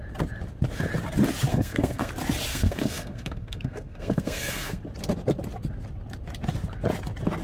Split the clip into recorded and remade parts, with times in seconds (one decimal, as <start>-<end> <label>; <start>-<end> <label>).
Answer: 0.0-1.5 recorded; 1.5-2.1 remade; 2.1-2.5 recorded; 2.5-4.8 remade; 4.8-7.4 recorded